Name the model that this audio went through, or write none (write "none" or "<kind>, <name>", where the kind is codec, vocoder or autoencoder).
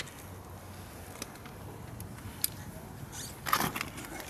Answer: none